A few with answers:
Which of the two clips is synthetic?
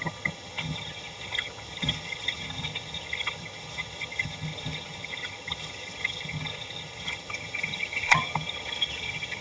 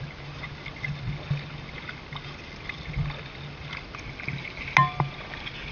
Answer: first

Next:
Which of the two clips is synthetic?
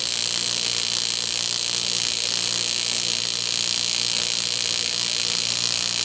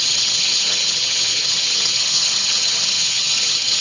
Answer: second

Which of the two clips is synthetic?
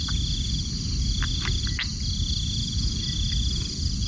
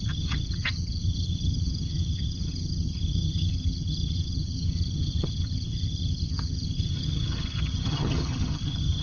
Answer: second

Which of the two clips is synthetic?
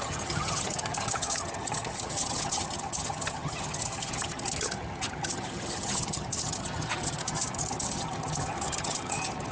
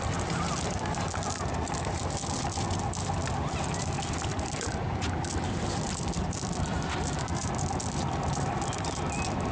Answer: first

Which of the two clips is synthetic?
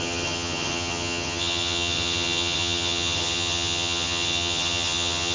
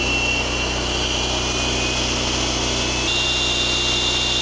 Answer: first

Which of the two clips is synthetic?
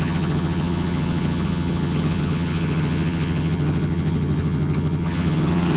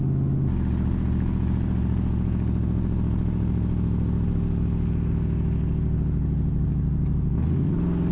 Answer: first